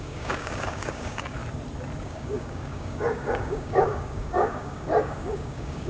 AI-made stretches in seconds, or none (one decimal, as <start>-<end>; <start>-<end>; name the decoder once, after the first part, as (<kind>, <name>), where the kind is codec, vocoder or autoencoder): 0.0-1.4 (codec, DAC); 2.0-5.9